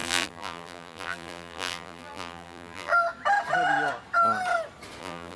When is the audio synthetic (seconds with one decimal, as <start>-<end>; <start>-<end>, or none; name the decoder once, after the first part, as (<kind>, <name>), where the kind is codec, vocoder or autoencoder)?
0.0-2.9 (vocoder, BigVGAN v2); 5.0-5.4